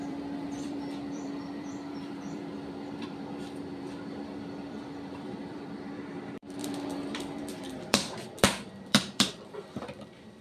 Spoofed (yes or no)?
yes